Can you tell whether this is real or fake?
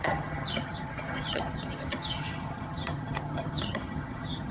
fake